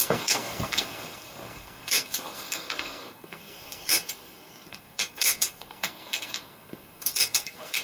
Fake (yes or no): yes